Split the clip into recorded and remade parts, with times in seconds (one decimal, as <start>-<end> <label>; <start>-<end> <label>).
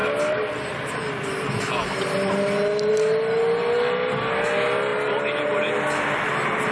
0.0-6.7 recorded